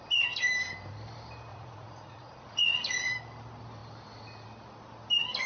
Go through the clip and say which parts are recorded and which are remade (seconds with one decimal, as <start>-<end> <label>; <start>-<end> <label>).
0.0-1.5 recorded; 1.5-3.1 remade; 3.1-5.5 recorded